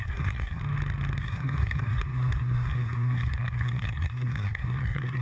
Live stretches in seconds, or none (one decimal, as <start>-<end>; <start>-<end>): 0.6-1.2